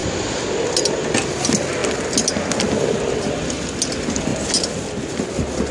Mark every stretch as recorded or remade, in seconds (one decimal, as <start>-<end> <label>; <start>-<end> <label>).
0.0-5.7 recorded